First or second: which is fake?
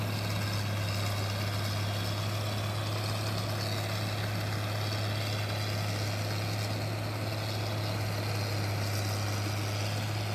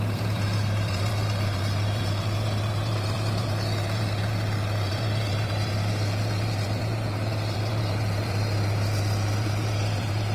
second